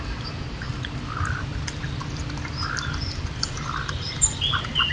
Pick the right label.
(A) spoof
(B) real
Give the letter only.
B